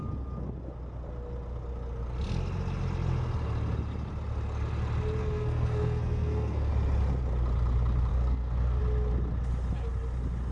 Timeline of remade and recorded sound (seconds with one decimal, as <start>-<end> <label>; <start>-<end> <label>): 0.0-5.2 recorded; 5.2-6.7 remade; 6.7-8.1 recorded; 8.1-8.8 remade; 8.8-10.5 recorded